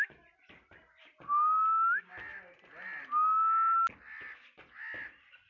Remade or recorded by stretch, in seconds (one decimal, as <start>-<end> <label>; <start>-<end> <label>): 0.0-5.5 recorded